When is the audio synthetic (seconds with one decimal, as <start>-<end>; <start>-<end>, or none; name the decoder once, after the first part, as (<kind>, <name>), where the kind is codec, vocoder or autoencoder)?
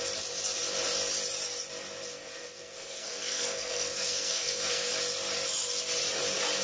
2.1-4.9 (codec, SNAC)